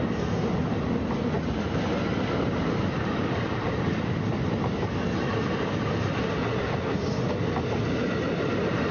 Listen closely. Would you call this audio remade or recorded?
recorded